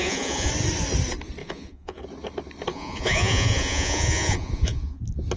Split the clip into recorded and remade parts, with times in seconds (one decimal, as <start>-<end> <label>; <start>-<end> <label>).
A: 0.0-0.5 remade; 0.5-1.4 recorded; 1.4-2.0 remade; 2.0-2.7 recorded; 2.7-5.0 remade; 5.0-5.4 recorded